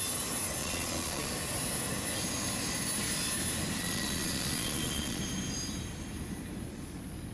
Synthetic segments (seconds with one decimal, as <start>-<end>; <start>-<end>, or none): 0.6-1.3; 3.8-5.2